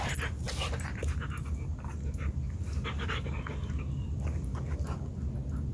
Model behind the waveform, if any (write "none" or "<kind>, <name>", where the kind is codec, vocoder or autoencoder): none